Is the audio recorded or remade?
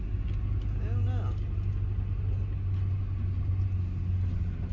recorded